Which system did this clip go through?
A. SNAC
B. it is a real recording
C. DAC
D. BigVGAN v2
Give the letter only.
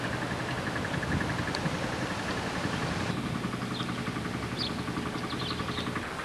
B